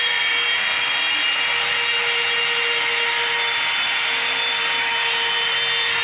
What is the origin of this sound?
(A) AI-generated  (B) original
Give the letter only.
B